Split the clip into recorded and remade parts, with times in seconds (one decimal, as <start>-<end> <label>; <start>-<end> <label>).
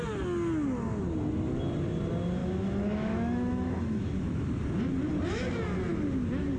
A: 0.0-2.4 recorded; 2.4-4.4 remade; 4.4-6.6 recorded